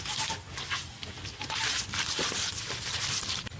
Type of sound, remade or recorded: remade